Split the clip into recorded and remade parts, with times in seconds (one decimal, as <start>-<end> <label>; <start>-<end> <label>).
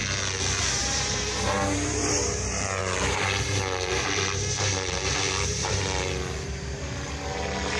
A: 0.0-0.6 recorded; 0.6-2.8 remade; 2.8-6.4 recorded; 6.4-7.8 remade